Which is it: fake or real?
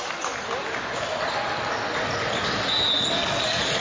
real